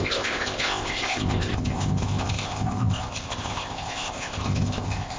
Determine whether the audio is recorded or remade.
remade